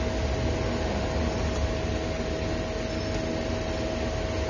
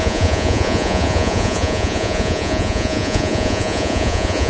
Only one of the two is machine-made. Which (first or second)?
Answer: second